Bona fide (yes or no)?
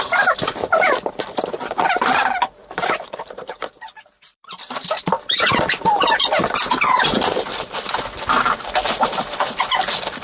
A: no